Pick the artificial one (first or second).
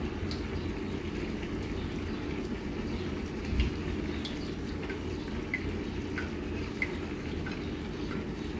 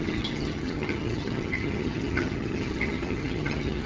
second